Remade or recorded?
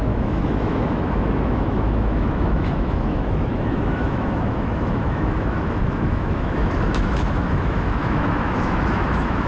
remade